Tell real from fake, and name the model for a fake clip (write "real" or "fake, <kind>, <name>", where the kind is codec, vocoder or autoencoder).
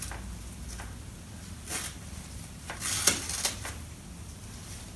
real